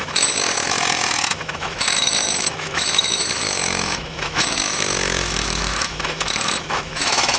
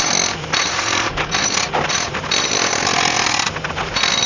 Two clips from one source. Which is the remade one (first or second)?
first